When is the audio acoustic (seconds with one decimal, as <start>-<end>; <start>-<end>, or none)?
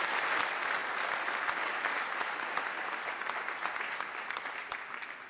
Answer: 0.0-5.3